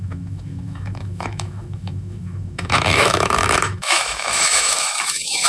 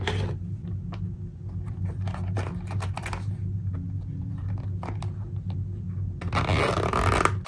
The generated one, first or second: first